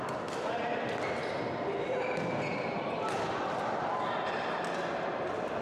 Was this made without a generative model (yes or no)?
yes